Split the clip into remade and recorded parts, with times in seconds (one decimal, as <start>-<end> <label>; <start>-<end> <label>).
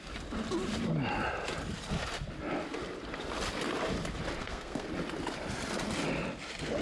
0.0-4.4 recorded; 4.4-4.9 remade; 4.9-6.8 recorded